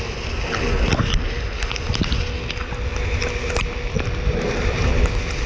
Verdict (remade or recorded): recorded